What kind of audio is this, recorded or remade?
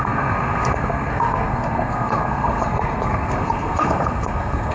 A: remade